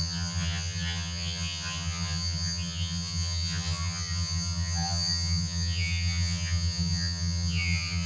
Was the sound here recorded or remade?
remade